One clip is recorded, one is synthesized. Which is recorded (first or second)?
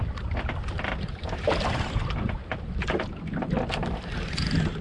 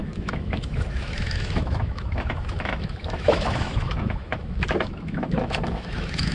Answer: first